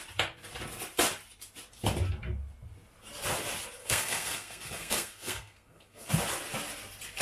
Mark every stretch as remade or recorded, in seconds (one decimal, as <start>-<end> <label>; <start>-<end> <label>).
0.0-3.8 recorded; 3.8-6.1 remade; 6.1-7.2 recorded